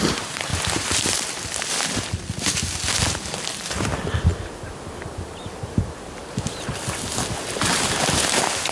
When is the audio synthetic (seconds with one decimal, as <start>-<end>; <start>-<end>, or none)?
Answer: none